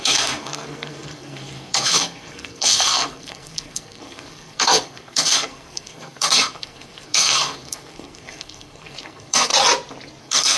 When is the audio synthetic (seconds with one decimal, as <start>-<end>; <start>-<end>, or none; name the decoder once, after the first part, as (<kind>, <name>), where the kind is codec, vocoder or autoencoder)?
0.0-9.5 (codec, SNAC); 10.2-10.6